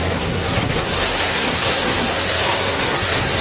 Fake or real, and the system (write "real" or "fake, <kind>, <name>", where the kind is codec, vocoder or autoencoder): fake, codec, SNAC